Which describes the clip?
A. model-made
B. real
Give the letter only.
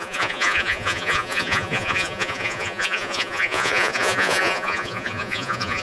A